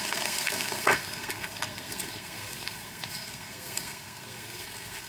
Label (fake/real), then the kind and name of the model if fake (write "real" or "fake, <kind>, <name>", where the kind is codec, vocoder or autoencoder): fake, codec, SNAC